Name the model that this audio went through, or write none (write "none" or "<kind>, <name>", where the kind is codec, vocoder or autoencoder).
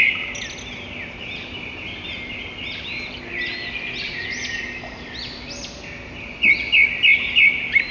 none